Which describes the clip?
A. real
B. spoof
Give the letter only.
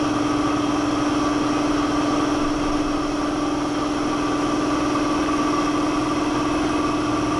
A